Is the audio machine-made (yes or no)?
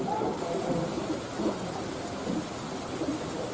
no